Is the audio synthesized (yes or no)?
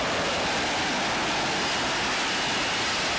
no